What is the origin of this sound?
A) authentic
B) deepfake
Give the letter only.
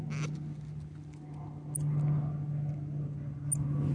A